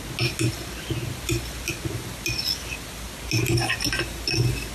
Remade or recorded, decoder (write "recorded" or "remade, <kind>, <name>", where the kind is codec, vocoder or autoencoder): recorded